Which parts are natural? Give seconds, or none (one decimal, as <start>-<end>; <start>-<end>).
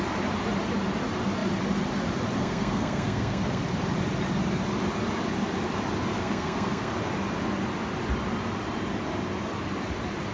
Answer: 0.0-2.4; 3.6-6.1; 6.9-10.3